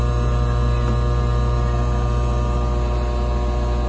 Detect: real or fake real